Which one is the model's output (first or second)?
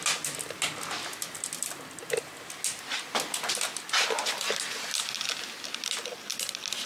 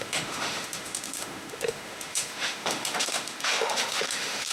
second